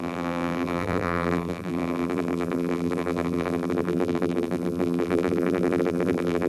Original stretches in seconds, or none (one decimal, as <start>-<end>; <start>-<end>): none